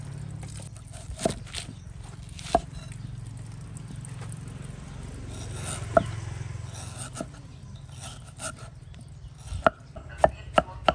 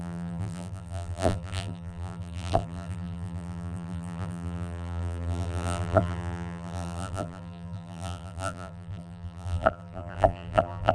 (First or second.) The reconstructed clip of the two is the second